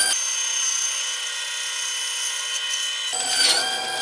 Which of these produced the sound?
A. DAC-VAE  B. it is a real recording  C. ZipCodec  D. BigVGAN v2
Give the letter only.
B